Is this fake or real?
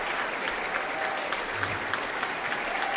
real